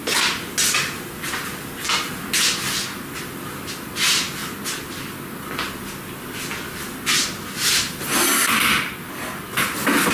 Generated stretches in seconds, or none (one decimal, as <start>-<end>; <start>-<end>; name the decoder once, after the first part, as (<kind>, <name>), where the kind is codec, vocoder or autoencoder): none